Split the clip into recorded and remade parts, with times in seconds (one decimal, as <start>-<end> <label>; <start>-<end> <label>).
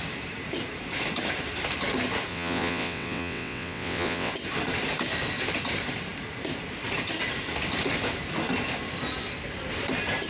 0.0-2.3 recorded; 2.3-4.3 remade; 4.3-10.3 recorded